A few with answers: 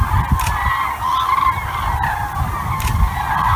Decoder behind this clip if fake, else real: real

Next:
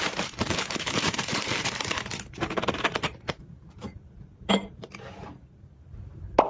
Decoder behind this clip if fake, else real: fake, vocoder, BigVGAN v2